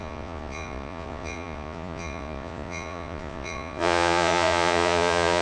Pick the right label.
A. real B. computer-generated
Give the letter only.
B